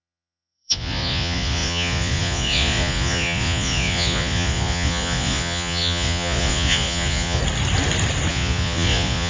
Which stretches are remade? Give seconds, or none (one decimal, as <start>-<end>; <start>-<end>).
0.0-7.4; 8.3-9.3